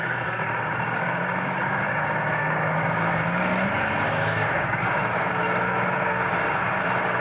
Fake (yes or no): yes